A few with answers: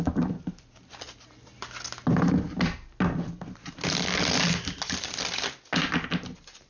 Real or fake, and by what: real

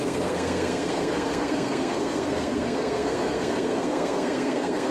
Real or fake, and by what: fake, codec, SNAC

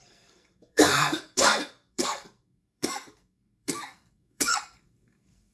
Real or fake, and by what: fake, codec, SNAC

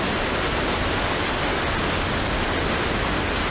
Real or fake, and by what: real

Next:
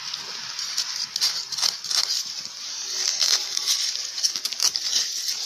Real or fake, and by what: real